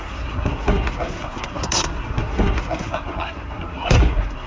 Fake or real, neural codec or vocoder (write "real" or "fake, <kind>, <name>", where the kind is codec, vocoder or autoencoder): fake, codec, SNAC